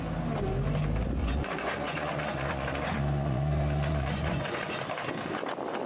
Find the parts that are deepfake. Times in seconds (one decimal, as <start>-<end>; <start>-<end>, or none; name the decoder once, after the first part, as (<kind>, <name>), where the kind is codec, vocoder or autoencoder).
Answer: 1.2-4.7 (vocoder, Vocos)